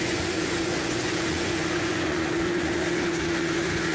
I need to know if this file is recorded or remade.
remade